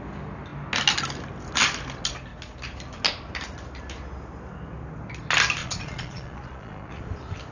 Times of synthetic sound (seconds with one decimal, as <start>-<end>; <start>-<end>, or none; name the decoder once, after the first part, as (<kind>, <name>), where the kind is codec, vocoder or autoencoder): 5.6-7.0 (vocoder, Vocos)